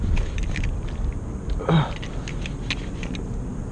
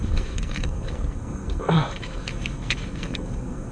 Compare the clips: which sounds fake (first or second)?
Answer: second